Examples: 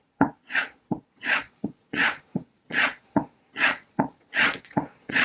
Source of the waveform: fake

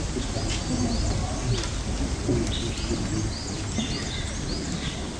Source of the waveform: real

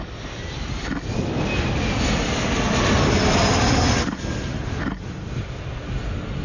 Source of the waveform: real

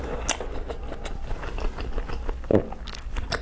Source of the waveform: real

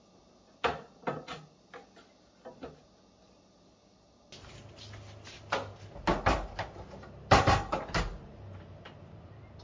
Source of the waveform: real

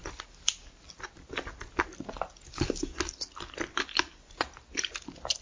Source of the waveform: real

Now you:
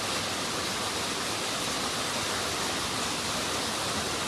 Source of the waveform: real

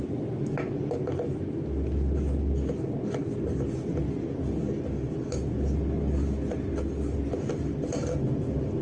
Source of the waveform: real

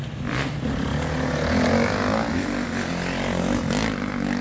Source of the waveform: real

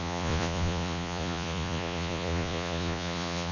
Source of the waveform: fake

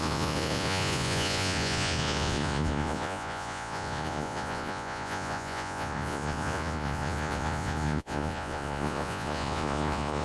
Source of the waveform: fake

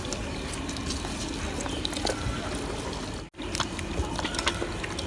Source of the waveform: real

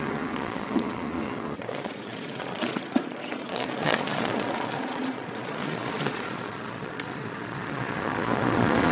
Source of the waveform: fake